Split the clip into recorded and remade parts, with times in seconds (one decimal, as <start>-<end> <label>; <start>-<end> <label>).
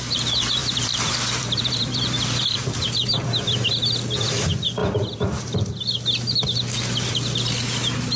0.0-0.6 recorded; 0.6-2.6 remade; 2.6-4.8 recorded; 4.8-5.4 remade; 5.4-8.2 recorded